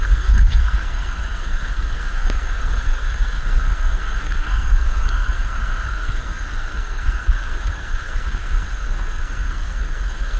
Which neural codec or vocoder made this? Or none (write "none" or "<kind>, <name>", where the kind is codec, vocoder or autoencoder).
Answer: codec, SNAC